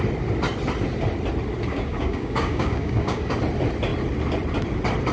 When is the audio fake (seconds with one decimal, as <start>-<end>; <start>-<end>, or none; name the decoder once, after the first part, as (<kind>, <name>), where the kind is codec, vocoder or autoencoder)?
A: 1.7-3.3 (codec, DAC)